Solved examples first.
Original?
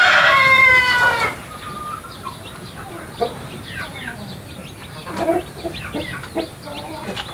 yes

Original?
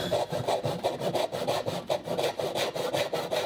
yes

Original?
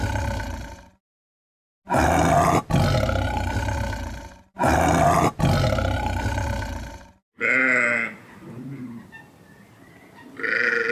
yes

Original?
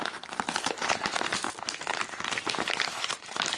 yes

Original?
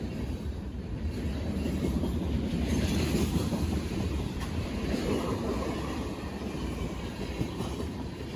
no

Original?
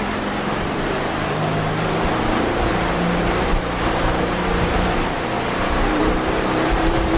no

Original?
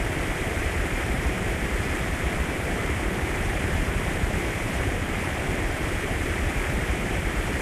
no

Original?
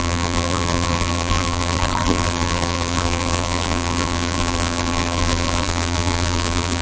no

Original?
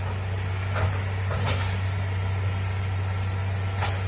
yes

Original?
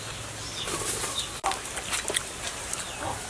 yes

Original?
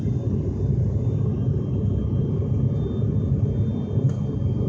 yes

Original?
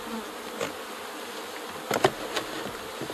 yes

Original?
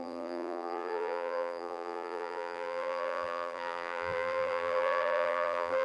no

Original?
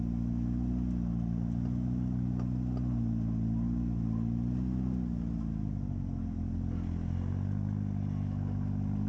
yes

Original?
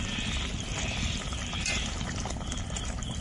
no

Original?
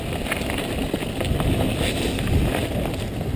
yes